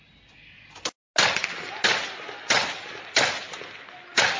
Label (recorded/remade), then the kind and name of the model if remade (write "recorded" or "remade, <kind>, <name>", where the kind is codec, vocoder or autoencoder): recorded